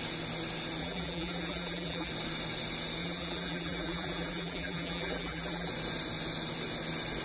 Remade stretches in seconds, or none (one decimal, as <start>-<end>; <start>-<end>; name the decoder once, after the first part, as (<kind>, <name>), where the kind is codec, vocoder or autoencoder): 0.8-2.1 (vocoder, BigVGAN v2); 3.0-5.7